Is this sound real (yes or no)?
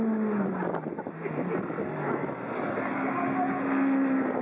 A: yes